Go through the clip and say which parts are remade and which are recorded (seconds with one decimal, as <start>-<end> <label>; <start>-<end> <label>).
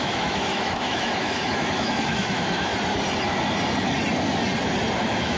0.0-2.7 remade; 2.7-5.0 recorded; 5.0-5.4 remade